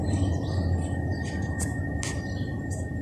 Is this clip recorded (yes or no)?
yes